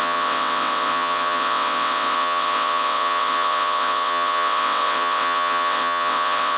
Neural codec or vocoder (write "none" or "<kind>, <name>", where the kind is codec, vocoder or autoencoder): vocoder, WaveNeXt